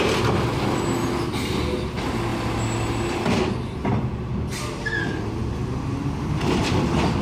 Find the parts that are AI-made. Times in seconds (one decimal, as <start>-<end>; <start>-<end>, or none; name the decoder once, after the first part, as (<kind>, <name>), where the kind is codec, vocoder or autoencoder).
none